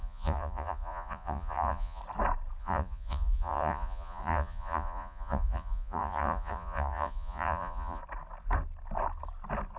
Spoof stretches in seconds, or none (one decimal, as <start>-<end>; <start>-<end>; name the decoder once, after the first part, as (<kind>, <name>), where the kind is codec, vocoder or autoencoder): 0.0-2.0 (vocoder, Vocos); 2.6-8.0